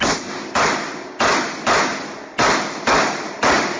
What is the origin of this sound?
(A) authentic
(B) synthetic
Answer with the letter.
A